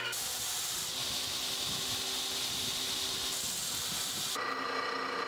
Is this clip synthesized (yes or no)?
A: no